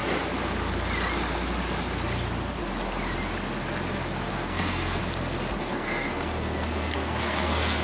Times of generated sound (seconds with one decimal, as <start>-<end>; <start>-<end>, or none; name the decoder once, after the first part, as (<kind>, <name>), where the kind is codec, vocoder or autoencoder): 4.3-5.0 (codec, SNAC); 5.7-7.8